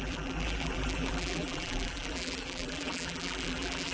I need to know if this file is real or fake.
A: fake